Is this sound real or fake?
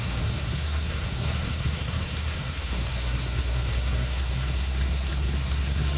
fake